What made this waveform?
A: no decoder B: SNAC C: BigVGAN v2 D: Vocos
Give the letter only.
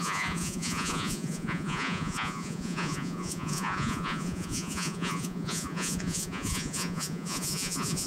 D